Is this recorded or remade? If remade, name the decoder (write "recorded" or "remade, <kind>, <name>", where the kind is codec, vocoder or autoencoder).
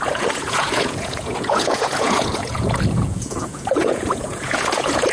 remade, vocoder, Vocos